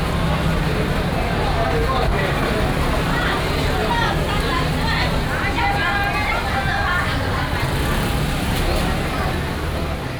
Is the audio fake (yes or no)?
no